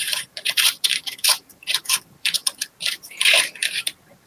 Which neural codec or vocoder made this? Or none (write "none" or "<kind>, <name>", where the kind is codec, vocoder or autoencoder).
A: vocoder, BigVGAN v2